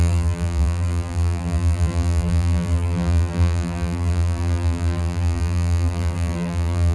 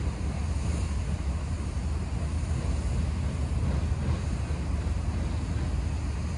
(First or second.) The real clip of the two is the second